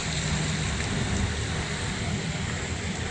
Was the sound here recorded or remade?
recorded